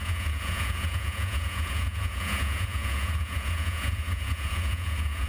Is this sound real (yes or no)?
no